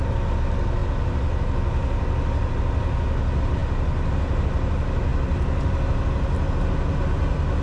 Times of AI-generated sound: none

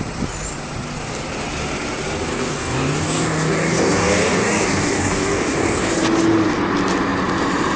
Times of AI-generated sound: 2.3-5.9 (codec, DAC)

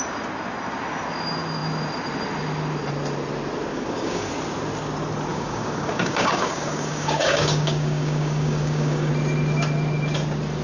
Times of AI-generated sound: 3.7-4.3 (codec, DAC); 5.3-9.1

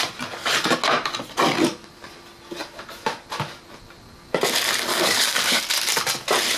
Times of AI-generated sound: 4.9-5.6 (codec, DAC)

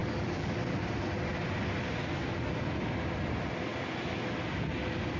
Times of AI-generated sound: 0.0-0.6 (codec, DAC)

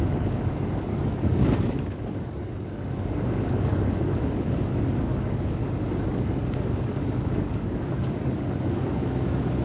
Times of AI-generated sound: 0.0-5.6 (codec, DAC); 6.1-9.6